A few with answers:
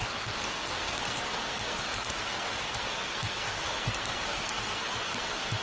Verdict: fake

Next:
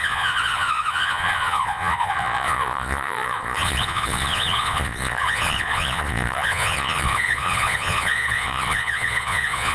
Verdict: fake